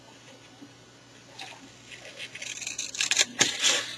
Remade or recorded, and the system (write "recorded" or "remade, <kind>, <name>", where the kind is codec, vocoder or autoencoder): recorded